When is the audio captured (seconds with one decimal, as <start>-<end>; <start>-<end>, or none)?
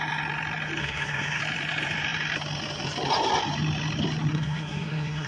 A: 0.0-0.8; 1.4-4.3